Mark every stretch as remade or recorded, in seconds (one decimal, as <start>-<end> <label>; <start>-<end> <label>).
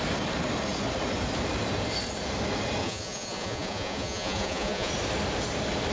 0.0-2.8 recorded; 2.8-4.9 remade; 4.9-5.9 recorded